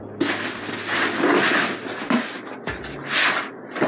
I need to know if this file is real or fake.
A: real